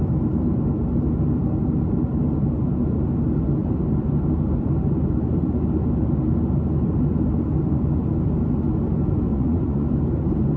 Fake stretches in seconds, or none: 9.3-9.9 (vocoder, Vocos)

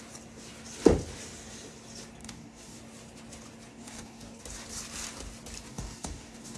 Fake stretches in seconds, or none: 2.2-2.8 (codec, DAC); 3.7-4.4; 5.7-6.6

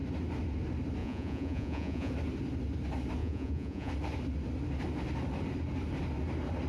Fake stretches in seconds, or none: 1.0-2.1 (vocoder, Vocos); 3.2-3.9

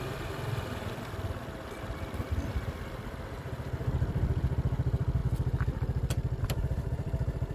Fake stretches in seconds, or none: 0.0-5.2 (vocoder, BigVGAN v2); 6.4-7.5

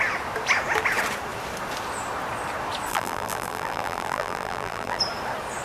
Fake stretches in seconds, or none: 2.9-5.0 (vocoder, BigVGAN v2)

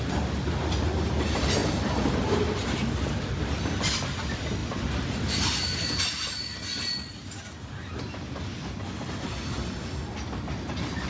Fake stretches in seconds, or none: none